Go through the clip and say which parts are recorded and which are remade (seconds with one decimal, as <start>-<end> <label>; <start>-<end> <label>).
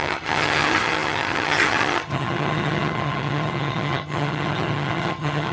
0.0-5.5 remade